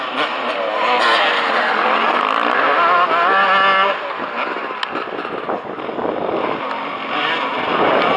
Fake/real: real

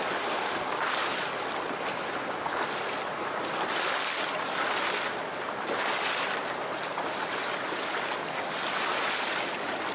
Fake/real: real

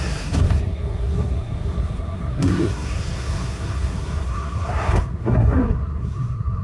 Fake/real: fake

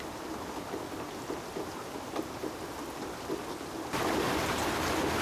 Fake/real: real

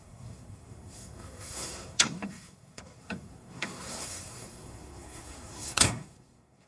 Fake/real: fake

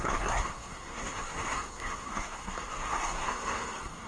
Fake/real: fake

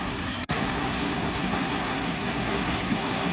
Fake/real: fake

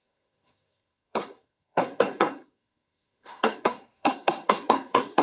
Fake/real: fake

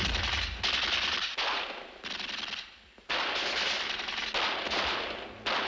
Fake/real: real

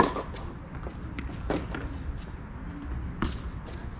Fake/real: real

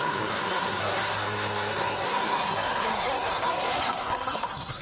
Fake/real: fake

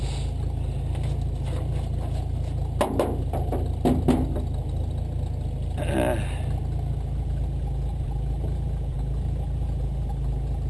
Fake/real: real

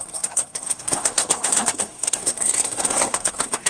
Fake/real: fake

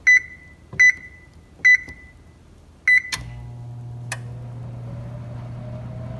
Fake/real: real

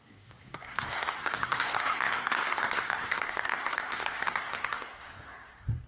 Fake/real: fake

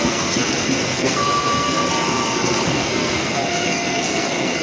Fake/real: fake